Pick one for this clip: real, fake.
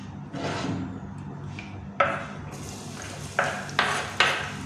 real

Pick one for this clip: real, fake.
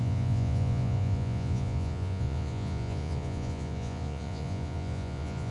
fake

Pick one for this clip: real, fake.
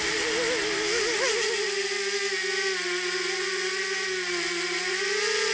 real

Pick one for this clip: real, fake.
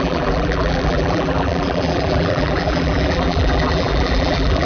fake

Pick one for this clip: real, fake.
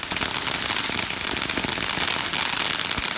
real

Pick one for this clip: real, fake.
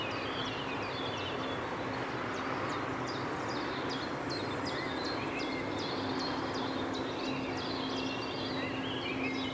real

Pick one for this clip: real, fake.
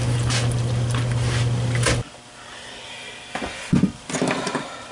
real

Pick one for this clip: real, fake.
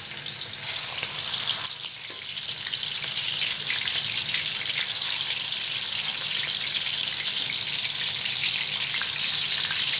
real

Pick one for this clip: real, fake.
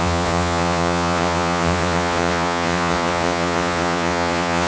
fake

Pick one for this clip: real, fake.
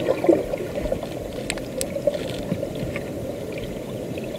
real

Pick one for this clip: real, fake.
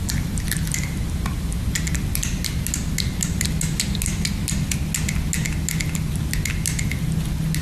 real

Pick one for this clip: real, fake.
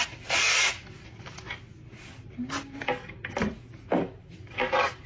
real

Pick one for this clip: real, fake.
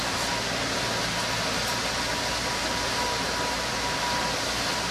real